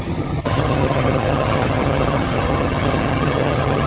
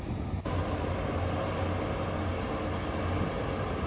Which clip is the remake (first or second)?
first